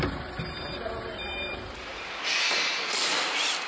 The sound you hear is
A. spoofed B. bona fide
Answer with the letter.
B